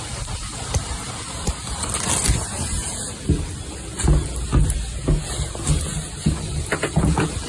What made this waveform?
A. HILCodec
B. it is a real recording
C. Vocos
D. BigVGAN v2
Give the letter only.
B